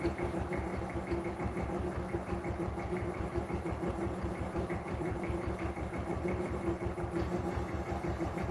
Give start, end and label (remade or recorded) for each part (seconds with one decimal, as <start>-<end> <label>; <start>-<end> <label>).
0.0-0.7 remade; 0.7-1.3 recorded; 1.3-8.5 remade